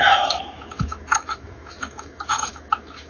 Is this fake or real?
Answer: fake